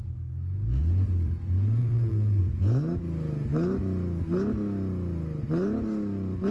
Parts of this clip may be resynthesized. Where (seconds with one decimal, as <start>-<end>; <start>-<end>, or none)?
1.8-2.4